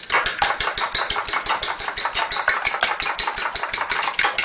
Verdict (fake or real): real